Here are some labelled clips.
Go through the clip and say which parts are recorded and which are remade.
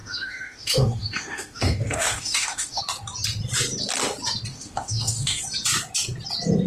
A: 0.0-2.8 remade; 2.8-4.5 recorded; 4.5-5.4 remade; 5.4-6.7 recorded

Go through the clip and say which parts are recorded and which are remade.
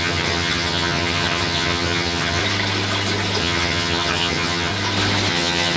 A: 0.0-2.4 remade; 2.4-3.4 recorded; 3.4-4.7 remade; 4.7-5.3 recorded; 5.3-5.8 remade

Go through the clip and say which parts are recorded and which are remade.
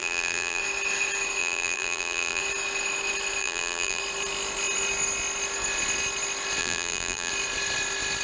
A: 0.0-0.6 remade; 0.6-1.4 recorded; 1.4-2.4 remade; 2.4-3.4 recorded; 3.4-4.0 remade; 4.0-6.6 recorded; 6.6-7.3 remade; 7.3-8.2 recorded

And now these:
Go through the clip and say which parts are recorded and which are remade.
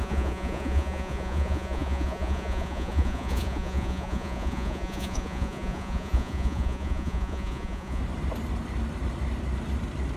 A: 0.0-8.0 remade; 8.0-10.2 recorded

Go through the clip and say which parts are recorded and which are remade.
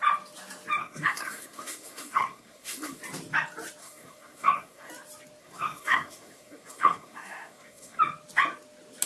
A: 0.0-0.8 recorded; 0.8-3.0 remade; 3.0-3.8 recorded; 3.8-4.9 remade; 4.9-5.4 recorded; 5.4-8.0 remade; 8.0-9.1 recorded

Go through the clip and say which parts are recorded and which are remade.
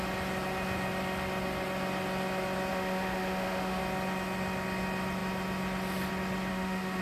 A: 0.0-2.7 recorded; 2.7-3.8 remade; 3.8-6.5 recorded; 6.5-7.0 remade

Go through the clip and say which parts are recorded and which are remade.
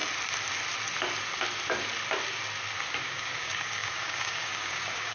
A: 0.0-3.0 recorded; 3.0-5.1 remade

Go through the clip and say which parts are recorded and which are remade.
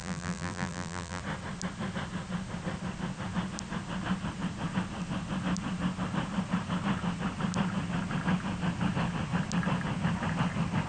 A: 0.0-1.2 remade; 1.2-10.9 recorded